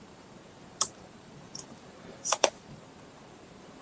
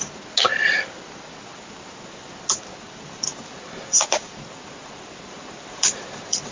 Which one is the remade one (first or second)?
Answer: first